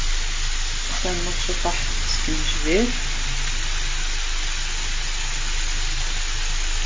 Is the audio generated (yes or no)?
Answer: no